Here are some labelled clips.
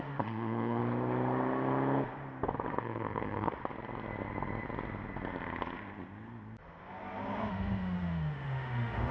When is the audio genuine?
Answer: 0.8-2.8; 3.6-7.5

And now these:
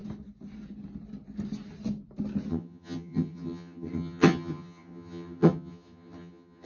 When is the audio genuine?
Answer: 0.0-2.5

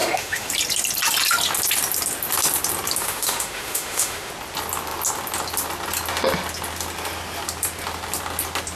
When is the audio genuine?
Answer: 0.5-3.0; 4.3-8.8